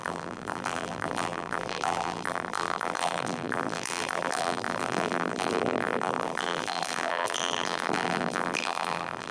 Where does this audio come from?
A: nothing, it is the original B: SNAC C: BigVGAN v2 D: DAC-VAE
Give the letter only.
C